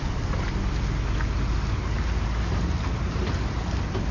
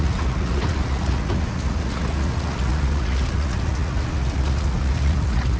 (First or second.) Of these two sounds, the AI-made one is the second